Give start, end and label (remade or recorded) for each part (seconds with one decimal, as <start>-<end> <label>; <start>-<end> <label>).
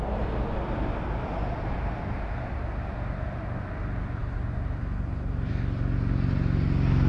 0.0-7.1 recorded